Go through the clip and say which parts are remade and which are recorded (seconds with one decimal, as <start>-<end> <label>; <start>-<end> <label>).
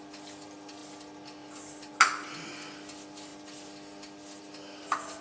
0.0-5.2 recorded